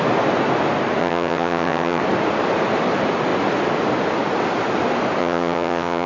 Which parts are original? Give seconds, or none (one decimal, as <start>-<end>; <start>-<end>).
0.0-1.0; 2.0-5.2

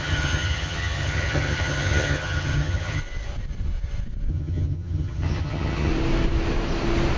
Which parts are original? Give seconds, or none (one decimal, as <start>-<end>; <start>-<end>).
3.0-4.3; 5.9-7.2

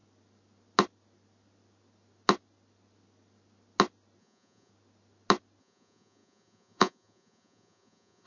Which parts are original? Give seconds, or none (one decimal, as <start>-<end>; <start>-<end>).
0.0-4.2; 4.7-5.6